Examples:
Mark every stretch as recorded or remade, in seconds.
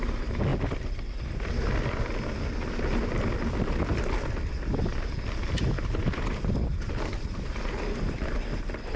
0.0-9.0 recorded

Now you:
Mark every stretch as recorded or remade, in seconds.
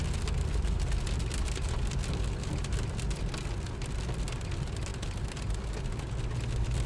0.0-6.9 recorded